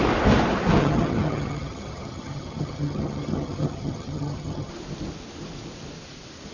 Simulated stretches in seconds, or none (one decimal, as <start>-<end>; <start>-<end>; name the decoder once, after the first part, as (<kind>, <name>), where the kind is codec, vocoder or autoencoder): 0.8-4.7 (vocoder, HiFi-GAN)